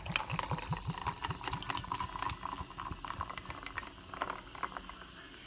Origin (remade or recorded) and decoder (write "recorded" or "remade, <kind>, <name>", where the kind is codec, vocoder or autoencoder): recorded